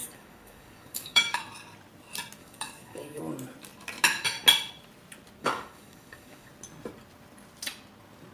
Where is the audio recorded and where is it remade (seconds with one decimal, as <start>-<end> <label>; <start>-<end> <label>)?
0.0-1.4 remade; 1.4-2.4 recorded; 2.4-3.2 remade; 3.2-5.4 recorded; 5.4-6.5 remade; 6.5-8.3 recorded